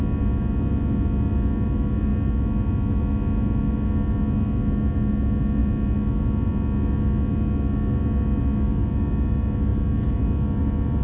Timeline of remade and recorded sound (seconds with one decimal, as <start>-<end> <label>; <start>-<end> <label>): 0.0-11.0 recorded